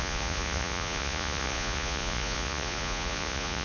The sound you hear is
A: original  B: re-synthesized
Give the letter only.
B